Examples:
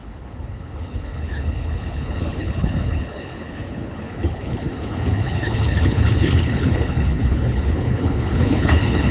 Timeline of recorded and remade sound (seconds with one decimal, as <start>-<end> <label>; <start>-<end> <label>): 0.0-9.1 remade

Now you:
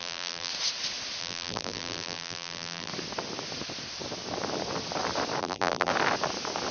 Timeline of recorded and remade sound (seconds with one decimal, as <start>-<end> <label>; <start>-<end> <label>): 0.0-0.5 remade; 0.5-1.2 recorded; 1.2-2.9 remade; 2.9-5.4 recorded; 5.4-5.9 remade; 5.9-6.7 recorded

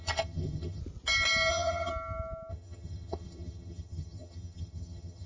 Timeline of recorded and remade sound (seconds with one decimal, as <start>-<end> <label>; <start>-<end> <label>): 0.0-0.8 remade; 0.8-1.5 recorded; 1.5-1.9 remade; 1.9-2.5 recorded; 2.5-5.3 remade